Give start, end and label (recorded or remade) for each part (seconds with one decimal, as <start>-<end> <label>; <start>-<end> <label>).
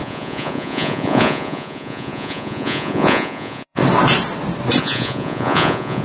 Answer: 0.0-3.8 remade; 3.8-4.8 recorded; 4.8-6.0 remade